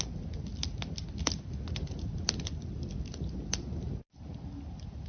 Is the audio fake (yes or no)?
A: no